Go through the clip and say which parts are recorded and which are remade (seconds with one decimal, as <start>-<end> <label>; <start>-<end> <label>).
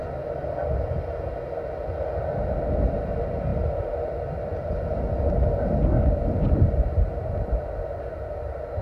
0.0-8.8 recorded